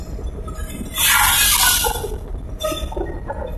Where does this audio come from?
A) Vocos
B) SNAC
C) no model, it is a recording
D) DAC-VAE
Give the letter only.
C